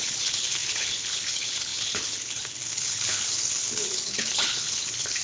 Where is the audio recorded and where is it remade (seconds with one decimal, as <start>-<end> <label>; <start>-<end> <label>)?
0.0-5.2 remade